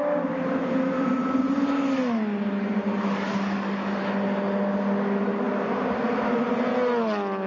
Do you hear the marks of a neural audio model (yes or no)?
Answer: no